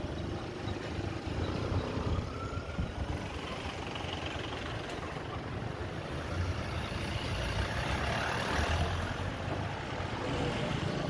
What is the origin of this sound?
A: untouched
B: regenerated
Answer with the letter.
B